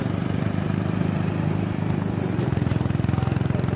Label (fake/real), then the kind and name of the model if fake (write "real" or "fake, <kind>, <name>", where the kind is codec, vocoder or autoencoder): fake, vocoder, BigVGAN v2